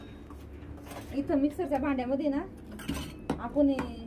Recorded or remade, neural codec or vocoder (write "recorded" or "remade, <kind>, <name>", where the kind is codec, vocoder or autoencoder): recorded